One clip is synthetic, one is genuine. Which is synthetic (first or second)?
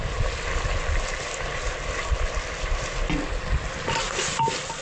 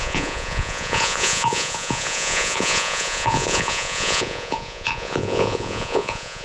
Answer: second